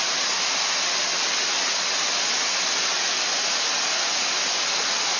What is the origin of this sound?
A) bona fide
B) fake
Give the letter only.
A